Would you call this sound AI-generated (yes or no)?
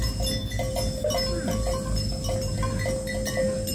no